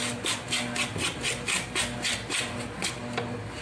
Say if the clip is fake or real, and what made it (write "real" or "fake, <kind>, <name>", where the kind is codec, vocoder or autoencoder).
real